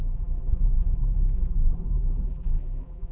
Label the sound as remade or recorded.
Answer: remade